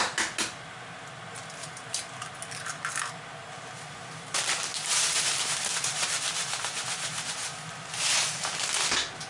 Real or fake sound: real